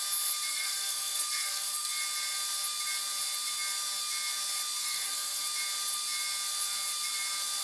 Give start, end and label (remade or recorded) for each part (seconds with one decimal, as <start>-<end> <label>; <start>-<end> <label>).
0.0-0.5 recorded; 0.5-1.9 remade; 1.9-4.8 recorded; 4.8-5.4 remade; 5.4-7.6 recorded